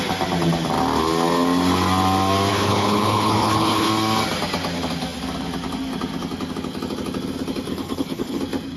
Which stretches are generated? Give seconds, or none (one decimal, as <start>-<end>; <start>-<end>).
2.5-3.9; 7.7-8.4